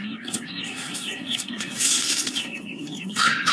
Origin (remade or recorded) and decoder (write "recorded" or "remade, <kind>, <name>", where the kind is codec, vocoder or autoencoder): remade, codec, SNAC